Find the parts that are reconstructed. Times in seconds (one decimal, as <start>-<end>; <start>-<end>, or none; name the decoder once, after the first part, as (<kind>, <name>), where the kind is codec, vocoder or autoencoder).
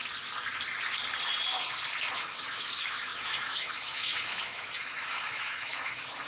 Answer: 2.1-6.3 (autoencoder, DAC-VAE)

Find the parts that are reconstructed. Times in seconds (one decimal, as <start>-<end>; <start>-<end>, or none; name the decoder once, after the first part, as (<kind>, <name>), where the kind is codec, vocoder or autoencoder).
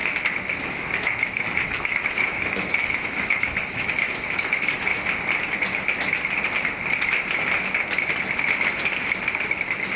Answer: 0.6-4.9 (autoencoder, DAC-VAE)